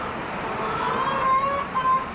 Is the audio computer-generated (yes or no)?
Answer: no